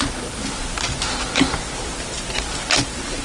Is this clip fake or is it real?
real